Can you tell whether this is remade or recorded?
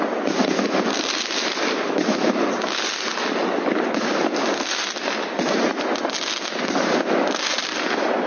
recorded